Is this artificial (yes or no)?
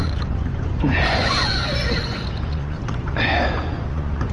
yes